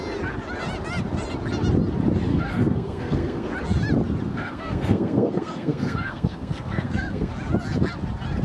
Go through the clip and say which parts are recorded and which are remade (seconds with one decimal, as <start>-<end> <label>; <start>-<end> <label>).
0.0-2.3 recorded; 2.3-3.5 remade; 3.5-4.3 recorded; 4.3-7.3 remade; 7.3-8.4 recorded